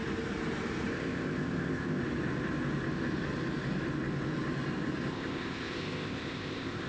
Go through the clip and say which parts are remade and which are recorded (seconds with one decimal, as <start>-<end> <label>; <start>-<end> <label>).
0.0-0.9 recorded; 0.9-2.0 remade; 2.0-5.1 recorded; 5.1-6.9 remade